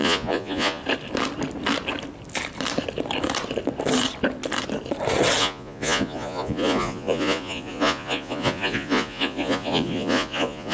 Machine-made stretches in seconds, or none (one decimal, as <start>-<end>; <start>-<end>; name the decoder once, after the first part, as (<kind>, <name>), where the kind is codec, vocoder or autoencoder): 0.0-0.8 (vocoder, Vocos); 5.4-10.7